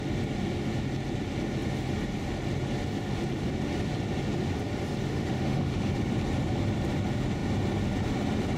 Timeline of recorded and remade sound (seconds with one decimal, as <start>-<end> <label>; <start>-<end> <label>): 0.0-5.1 recorded; 5.1-6.1 remade; 6.1-8.6 recorded